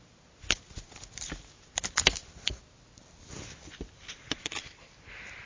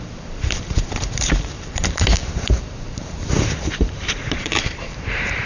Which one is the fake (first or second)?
second